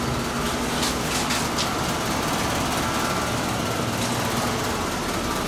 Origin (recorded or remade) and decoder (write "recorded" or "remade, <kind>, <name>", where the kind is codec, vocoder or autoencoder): recorded